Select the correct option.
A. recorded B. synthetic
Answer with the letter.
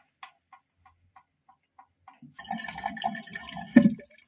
A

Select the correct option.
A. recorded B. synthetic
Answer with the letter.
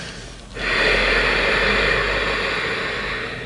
A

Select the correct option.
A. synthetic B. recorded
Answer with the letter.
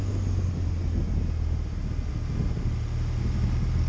B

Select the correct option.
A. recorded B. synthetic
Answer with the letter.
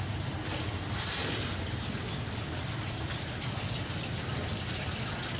A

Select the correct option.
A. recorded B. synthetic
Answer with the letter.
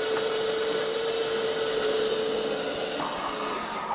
A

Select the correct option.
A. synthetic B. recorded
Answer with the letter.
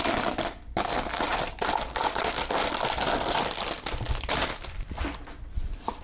B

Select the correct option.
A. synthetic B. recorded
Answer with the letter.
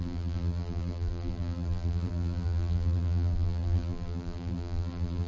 A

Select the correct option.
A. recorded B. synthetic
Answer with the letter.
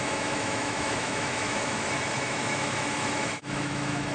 B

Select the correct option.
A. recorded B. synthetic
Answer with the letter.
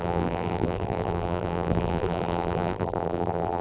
B